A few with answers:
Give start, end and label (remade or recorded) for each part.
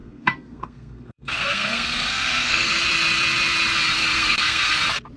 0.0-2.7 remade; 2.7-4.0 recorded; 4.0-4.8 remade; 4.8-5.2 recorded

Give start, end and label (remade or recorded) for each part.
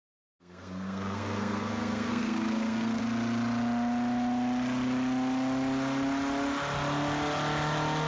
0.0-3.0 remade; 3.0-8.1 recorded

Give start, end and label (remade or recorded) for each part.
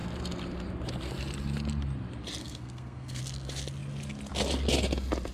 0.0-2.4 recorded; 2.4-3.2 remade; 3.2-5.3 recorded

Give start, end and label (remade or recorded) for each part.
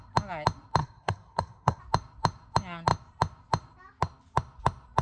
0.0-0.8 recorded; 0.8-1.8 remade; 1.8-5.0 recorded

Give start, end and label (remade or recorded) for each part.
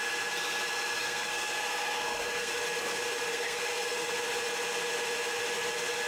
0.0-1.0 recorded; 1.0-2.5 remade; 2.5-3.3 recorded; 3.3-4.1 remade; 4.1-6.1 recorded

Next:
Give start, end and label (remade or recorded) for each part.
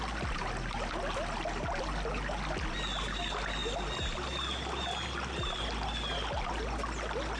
0.0-7.4 recorded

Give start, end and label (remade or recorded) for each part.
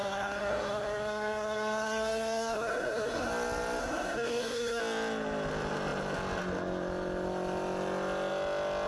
0.0-3.3 remade; 3.3-3.8 recorded; 3.8-4.8 remade; 4.8-8.9 recorded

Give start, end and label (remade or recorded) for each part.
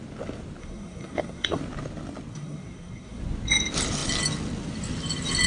0.0-0.6 recorded; 0.6-1.6 remade; 1.6-2.3 recorded; 2.3-3.2 remade; 3.2-5.5 recorded